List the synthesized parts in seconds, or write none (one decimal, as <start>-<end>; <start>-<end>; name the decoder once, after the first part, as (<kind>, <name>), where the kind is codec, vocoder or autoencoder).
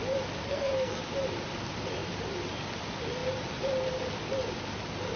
0.4-1.0 (codec, SNAC)